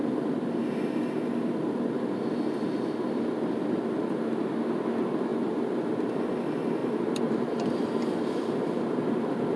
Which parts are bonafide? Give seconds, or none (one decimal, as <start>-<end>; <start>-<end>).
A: 0.0-5.3; 5.9-6.8